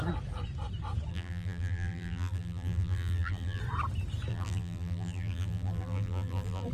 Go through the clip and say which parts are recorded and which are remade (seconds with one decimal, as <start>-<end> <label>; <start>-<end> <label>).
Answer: 0.0-1.1 recorded; 1.1-3.6 remade; 3.6-4.3 recorded; 4.3-6.7 remade